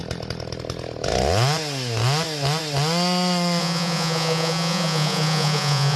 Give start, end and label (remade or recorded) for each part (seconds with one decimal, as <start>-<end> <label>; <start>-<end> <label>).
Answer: 0.0-3.6 recorded; 3.6-6.0 remade